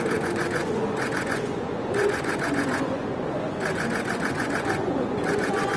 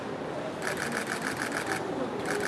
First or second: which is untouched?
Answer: second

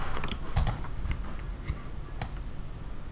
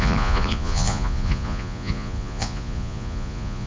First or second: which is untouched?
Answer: first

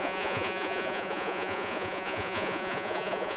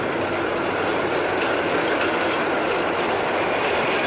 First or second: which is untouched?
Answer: second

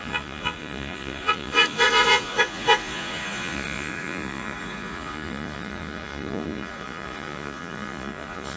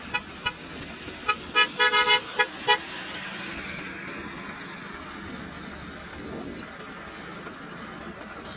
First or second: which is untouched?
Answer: second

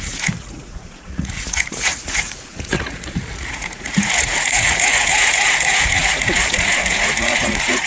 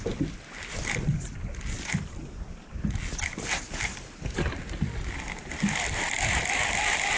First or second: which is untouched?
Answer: second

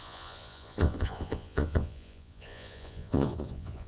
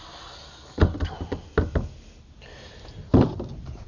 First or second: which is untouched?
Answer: second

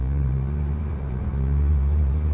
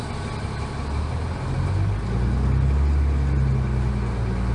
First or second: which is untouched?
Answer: second